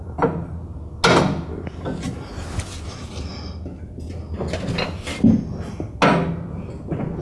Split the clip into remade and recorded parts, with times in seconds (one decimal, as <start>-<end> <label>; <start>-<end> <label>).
0.0-7.2 recorded